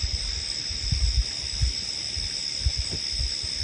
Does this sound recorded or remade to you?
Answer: recorded